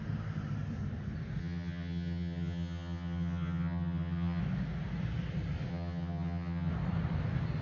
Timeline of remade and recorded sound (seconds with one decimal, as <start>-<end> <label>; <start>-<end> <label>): 0.0-1.4 recorded; 1.4-4.4 remade; 4.4-5.7 recorded; 5.7-6.7 remade; 6.7-7.6 recorded